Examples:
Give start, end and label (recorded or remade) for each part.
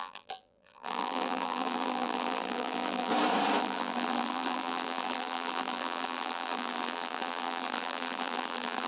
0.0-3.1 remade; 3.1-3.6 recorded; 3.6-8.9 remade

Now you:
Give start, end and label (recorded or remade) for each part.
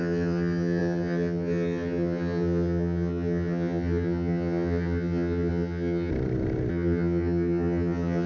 0.0-6.1 remade; 6.1-6.7 recorded; 6.7-8.3 remade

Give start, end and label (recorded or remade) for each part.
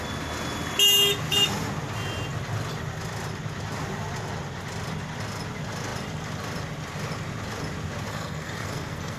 0.0-8.1 recorded; 8.1-9.2 remade